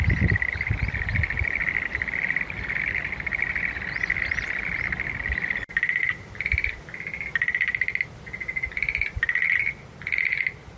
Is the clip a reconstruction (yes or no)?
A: no